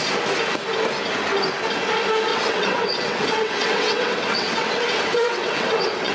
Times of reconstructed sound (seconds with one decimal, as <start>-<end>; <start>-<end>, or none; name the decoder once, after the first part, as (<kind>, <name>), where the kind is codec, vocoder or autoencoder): 2.3-6.1 (vocoder, WaveNeXt)